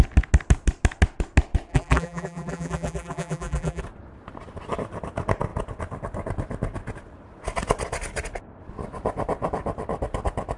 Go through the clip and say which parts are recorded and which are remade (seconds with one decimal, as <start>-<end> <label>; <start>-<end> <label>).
0.0-1.7 recorded; 1.7-3.8 remade; 3.8-10.6 recorded